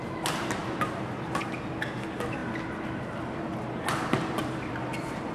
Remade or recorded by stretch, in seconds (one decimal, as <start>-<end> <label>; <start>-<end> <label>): 0.0-5.3 recorded